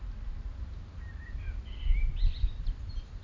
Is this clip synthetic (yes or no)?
no